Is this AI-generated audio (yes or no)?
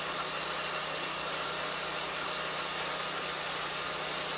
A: no